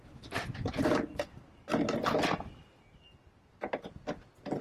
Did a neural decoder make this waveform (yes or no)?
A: no